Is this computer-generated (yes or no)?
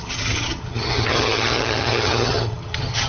yes